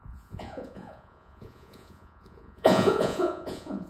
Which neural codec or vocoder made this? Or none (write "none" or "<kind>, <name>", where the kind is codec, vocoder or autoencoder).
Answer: vocoder, Vocos